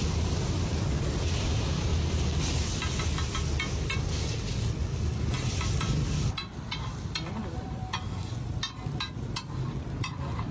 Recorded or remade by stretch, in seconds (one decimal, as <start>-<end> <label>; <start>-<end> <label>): 0.0-1.9 remade; 1.9-3.9 recorded; 3.9-7.8 remade; 7.8-9.8 recorded; 9.8-10.5 remade